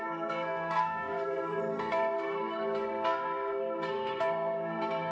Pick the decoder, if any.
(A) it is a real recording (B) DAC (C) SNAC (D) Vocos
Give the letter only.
C